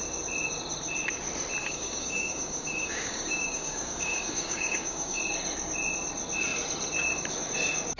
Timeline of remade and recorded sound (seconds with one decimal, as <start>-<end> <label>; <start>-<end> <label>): 0.0-1.6 recorded; 1.6-5.2 remade; 5.2-8.0 recorded